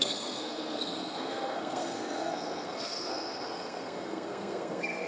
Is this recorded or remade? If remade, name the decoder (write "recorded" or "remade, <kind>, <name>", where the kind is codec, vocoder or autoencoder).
remade, codec, SNAC